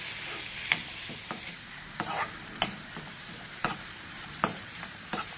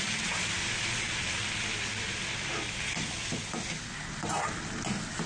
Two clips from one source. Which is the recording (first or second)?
second